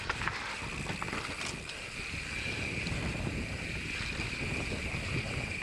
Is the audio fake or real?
fake